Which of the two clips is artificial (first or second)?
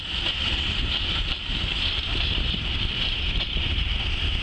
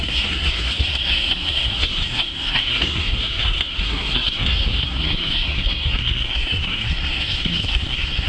second